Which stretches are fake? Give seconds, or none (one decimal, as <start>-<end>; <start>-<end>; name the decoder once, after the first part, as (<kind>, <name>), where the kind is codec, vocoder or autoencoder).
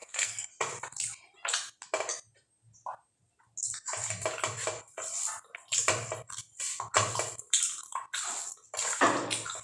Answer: 0.0-0.5 (codec, SNAC)